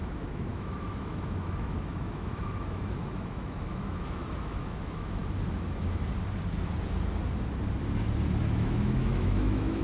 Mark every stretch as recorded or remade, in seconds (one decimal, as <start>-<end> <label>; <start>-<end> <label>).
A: 0.0-5.2 remade; 5.2-8.4 recorded; 8.4-9.8 remade